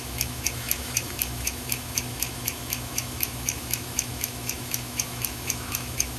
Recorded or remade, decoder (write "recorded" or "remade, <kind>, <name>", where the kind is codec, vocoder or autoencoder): remade, autoencoder, DAC-VAE